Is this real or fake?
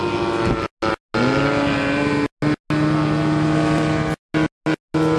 real